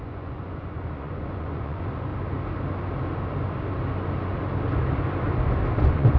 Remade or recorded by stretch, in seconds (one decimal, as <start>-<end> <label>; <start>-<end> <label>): 0.0-2.1 remade; 2.1-5.8 recorded; 5.8-6.2 remade